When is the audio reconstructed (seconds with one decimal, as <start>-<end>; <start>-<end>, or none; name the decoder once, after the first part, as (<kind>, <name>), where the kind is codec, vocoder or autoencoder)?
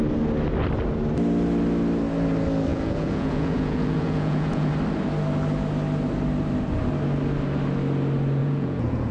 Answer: 2.7-4.7 (vocoder, Vocos); 8.4-9.1